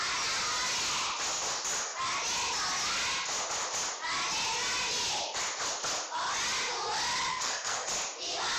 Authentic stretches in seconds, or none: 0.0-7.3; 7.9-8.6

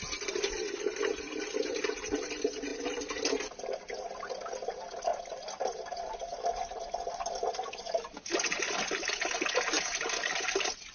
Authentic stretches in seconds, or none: 0.0-10.9

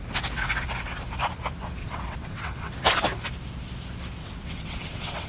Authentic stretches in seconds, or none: 0.0-1.8; 2.7-4.2

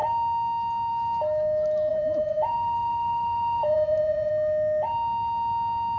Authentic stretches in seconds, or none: 0.0-1.9; 4.3-6.0

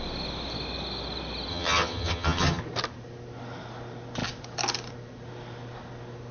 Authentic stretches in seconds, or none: 0.0-1.5; 2.6-6.3

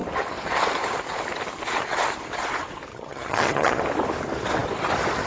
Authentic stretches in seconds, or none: 0.0-2.9; 3.8-5.3